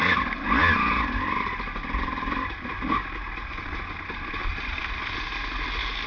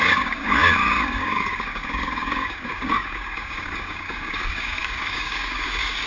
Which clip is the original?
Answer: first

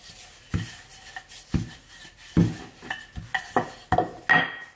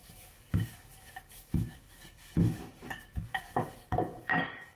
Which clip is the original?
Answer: first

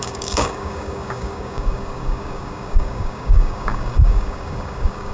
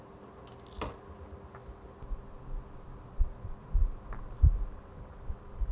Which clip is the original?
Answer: second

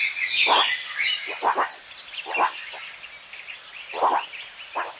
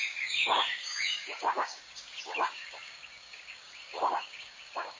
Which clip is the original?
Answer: first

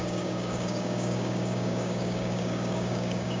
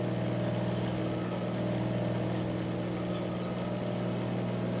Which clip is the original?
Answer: second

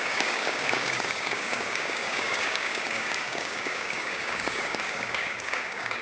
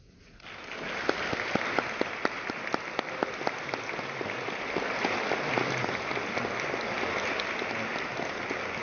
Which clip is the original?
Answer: second